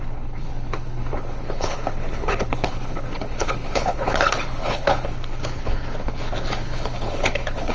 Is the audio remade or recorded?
remade